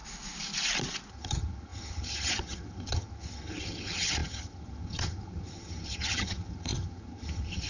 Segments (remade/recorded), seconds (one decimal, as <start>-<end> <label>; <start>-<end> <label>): 0.0-1.1 recorded; 1.1-7.7 remade